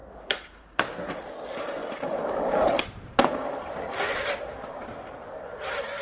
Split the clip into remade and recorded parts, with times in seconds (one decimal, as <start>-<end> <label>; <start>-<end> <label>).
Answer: 0.0-0.8 remade; 0.8-1.8 recorded; 1.8-4.8 remade; 4.8-5.2 recorded; 5.2-6.0 remade